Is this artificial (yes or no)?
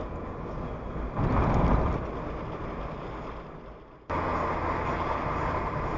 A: no